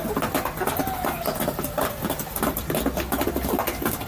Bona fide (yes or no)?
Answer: yes